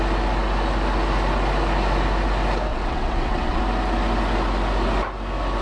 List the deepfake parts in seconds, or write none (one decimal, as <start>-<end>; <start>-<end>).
2.7-3.6